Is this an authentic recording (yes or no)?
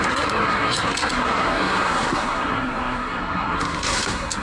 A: no